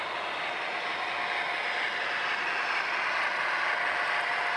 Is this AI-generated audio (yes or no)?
no